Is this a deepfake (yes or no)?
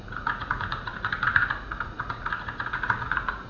yes